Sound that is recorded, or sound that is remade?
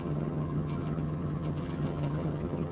remade